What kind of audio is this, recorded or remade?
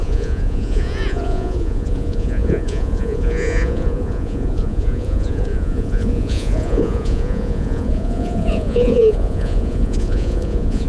remade